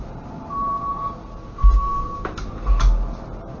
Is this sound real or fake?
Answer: real